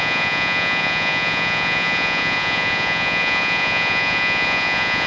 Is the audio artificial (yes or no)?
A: yes